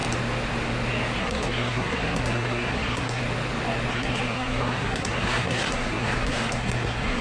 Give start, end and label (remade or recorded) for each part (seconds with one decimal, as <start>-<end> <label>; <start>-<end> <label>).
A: 0.0-1.2 recorded; 1.2-3.2 remade; 3.2-3.9 recorded; 3.9-7.2 remade